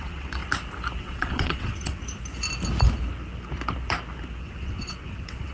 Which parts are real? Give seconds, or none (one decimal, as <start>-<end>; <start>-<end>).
0.4-1.0; 2.0-4.4